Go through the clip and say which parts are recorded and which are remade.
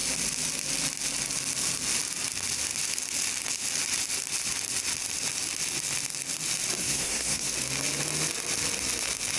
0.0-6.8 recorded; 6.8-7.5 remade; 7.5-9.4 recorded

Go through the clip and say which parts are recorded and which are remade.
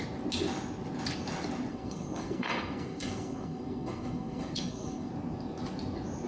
0.0-1.7 recorded; 1.7-5.1 remade; 5.1-6.3 recorded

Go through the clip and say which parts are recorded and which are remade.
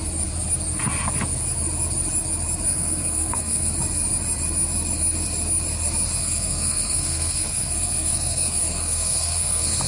0.0-2.7 recorded; 2.7-3.7 remade; 3.7-6.2 recorded; 6.2-9.9 remade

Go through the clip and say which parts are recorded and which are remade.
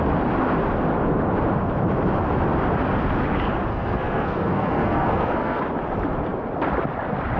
0.0-3.7 recorded; 3.7-5.6 remade; 5.6-7.4 recorded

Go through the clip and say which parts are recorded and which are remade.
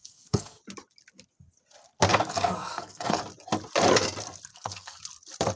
0.0-0.6 remade; 0.6-2.1 recorded; 2.1-3.2 remade; 3.2-4.5 recorded; 4.5-5.0 remade; 5.0-5.6 recorded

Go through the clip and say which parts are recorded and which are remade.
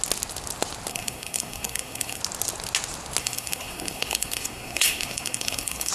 0.0-0.9 recorded; 0.9-2.2 remade; 2.2-3.2 recorded; 3.2-5.9 remade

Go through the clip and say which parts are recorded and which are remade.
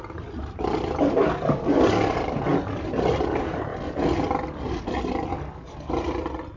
0.0-6.6 recorded